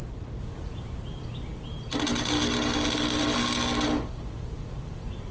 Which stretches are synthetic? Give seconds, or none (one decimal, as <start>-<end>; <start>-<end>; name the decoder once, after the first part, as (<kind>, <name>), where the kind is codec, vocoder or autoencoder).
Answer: none